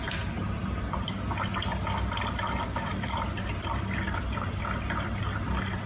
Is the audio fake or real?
real